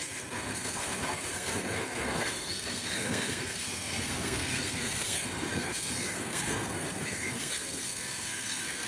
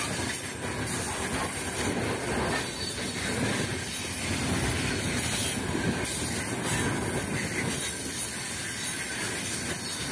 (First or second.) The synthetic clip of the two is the first